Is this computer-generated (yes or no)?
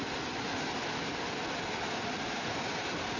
no